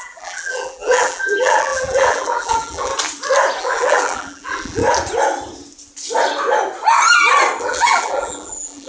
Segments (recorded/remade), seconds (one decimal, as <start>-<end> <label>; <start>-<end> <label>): 0.0-2.9 remade; 2.9-3.6 recorded; 3.6-4.8 remade; 4.8-7.6 recorded; 7.6-8.9 remade